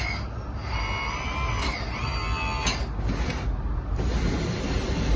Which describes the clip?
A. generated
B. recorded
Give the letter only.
B